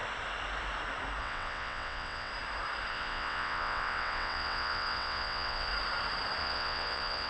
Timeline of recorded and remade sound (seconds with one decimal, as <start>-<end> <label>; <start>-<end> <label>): 0.0-1.2 recorded; 1.2-2.3 remade; 2.3-2.9 recorded; 2.9-5.7 remade; 5.7-6.4 recorded; 6.4-7.3 remade